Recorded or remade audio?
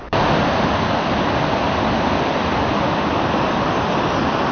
recorded